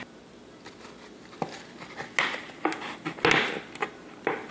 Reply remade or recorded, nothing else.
recorded